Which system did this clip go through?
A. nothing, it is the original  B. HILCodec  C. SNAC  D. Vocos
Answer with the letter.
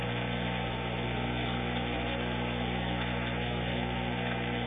C